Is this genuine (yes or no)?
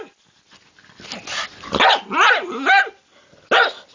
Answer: yes